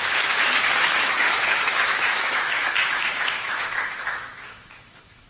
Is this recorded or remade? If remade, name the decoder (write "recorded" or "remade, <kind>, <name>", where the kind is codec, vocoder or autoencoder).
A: remade, autoencoder, DAC-VAE